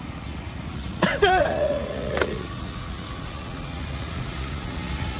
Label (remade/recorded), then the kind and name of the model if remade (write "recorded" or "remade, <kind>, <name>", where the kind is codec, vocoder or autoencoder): remade, vocoder, Vocos